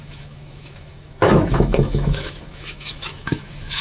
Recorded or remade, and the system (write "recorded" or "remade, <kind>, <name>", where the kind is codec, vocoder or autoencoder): remade, autoencoder, DAC-VAE